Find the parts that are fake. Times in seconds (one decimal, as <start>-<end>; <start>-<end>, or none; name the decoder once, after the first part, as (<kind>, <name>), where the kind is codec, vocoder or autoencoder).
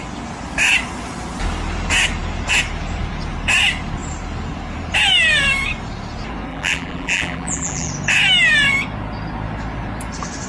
6.5-7.9 (vocoder, BigVGAN v2)